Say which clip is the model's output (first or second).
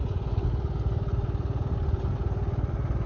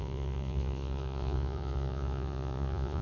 second